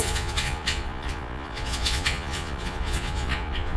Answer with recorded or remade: remade